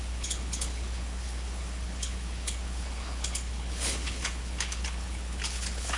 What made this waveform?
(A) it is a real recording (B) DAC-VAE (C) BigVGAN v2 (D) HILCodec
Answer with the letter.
D